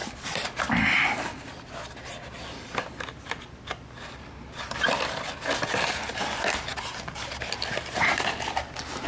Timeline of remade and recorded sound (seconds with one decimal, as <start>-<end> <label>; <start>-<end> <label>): 0.0-9.1 recorded